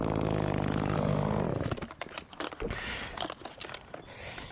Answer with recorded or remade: recorded